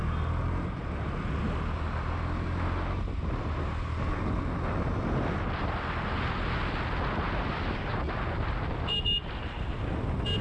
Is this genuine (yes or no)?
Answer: yes